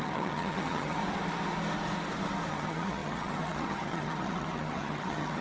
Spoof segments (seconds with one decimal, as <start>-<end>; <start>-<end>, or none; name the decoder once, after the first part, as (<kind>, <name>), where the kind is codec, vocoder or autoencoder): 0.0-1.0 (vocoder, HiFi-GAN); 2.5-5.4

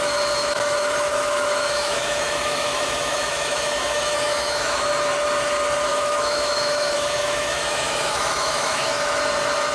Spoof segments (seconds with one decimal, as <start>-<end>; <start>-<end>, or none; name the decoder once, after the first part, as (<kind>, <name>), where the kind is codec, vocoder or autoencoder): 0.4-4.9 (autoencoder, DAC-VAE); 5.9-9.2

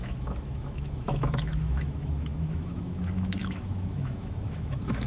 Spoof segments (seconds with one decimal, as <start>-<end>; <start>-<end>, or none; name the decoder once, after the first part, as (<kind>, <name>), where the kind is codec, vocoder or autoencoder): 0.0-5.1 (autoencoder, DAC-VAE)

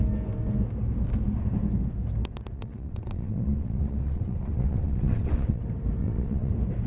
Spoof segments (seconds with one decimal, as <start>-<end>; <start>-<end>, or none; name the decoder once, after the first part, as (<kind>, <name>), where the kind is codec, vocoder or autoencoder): 2.5-5.6 (vocoder, WaveNeXt); 6.0-6.5

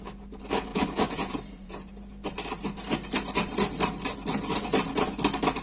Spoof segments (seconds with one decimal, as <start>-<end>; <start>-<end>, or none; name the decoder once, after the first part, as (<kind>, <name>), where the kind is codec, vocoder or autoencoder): 0.7-1.9 (vocoder, Vocos)

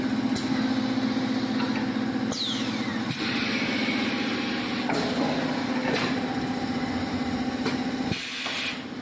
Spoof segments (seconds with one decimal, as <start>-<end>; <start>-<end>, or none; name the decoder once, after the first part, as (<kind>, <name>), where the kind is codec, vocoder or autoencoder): 5.8-7.1 (vocoder, BigVGAN v2)